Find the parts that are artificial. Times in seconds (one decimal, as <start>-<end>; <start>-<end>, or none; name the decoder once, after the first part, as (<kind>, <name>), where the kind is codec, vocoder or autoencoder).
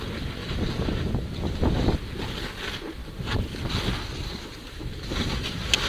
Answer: 0.4-1.1 (vocoder, BigVGAN v2)